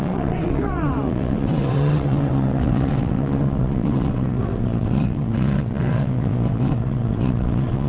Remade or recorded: remade